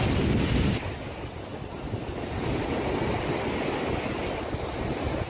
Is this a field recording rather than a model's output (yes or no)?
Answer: yes